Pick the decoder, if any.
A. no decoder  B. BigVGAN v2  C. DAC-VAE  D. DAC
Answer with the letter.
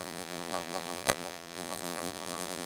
B